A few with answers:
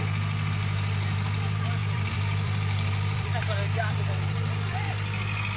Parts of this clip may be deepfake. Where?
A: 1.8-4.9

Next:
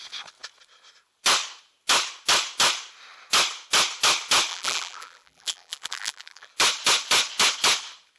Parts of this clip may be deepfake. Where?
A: 4.5-6.5

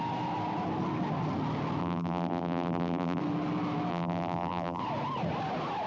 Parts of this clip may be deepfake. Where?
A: 1.8-3.2; 3.9-4.8

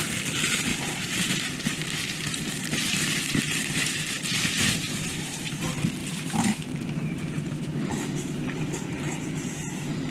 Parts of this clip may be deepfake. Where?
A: 0.7-5.6; 6.0-7.2